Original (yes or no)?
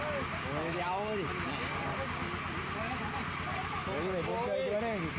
yes